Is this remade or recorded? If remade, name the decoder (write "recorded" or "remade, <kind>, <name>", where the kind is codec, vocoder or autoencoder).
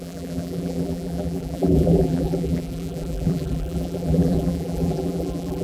remade, vocoder, BigVGAN v2